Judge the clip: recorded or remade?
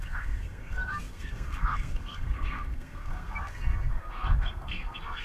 remade